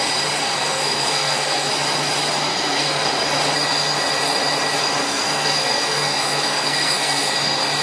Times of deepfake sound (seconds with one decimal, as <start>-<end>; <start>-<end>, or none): 0.4-1.7; 2.5-3.1; 5.0-7.3